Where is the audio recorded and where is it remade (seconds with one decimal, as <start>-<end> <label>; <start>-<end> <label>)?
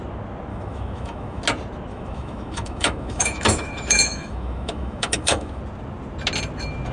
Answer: 0.0-0.5 recorded; 0.5-1.4 remade; 1.4-1.9 recorded; 1.9-5.6 remade; 5.6-6.9 recorded